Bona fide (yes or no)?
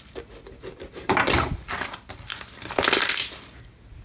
yes